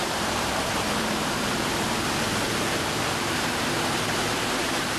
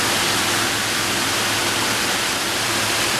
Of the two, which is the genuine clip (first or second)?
second